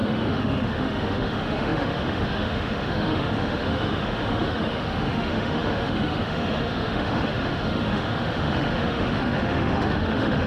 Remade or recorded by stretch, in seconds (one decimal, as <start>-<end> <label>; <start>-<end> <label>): 0.0-10.5 remade